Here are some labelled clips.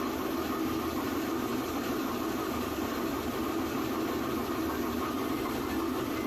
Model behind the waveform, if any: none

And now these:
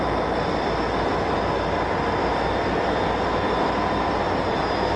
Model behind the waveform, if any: none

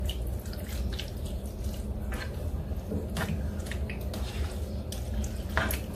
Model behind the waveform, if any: none